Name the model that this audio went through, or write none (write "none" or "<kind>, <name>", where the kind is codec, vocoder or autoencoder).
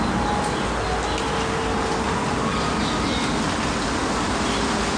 none